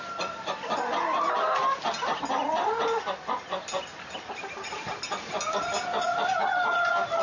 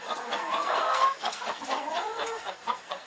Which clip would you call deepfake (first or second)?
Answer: second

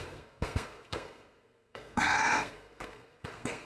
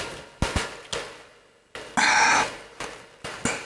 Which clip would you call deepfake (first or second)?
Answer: first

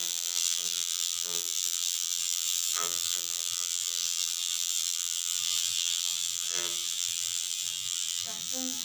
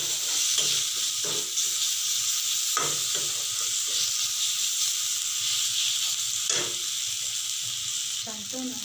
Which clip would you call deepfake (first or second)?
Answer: first